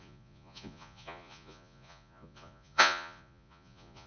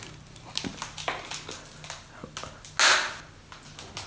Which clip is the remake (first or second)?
first